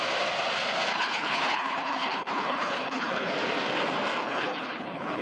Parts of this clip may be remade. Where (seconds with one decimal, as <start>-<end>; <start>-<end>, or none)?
0.9-3.3; 4.2-5.2